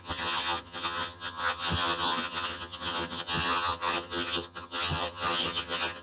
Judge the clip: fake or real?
fake